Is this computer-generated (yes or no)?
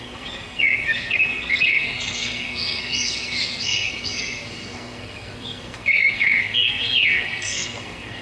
yes